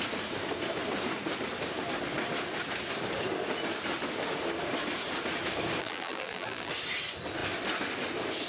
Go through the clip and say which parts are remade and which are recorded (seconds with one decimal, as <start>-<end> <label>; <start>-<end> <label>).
0.0-5.8 recorded; 5.8-6.7 remade; 6.7-8.5 recorded